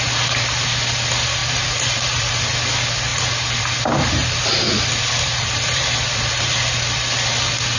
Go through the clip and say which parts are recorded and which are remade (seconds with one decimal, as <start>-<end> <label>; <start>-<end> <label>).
0.0-1.4 recorded; 1.4-2.3 remade; 2.3-4.2 recorded; 4.2-6.3 remade; 6.3-7.8 recorded